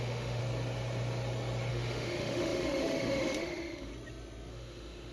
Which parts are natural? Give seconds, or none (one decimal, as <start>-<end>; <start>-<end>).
0.4-1.7; 3.9-4.5